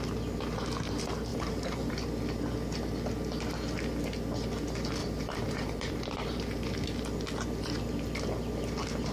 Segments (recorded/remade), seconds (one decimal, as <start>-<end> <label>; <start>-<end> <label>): 0.0-1.3 recorded; 1.3-1.9 remade; 1.9-5.0 recorded; 5.0-6.7 remade; 6.7-9.1 recorded